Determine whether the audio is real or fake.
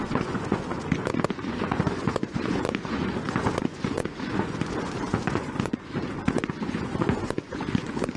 fake